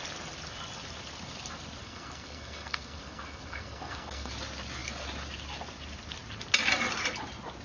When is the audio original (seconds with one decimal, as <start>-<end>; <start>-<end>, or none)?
0.0-1.8; 4.3-7.6